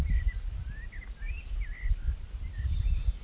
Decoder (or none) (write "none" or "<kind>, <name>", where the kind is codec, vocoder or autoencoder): none